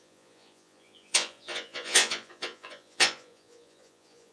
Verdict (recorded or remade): remade